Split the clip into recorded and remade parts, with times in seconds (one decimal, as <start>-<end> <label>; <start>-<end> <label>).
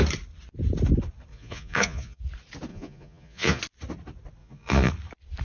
0.0-1.3 recorded; 1.3-2.2 remade; 2.2-2.7 recorded; 2.7-3.6 remade; 3.6-4.4 recorded; 4.4-4.9 remade; 4.9-5.4 recorded